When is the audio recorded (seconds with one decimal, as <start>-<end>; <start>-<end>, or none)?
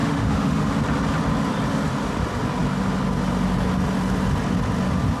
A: 0.7-5.2